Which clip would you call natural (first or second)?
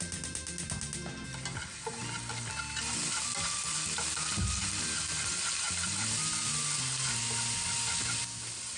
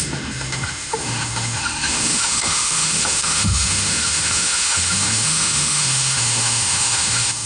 first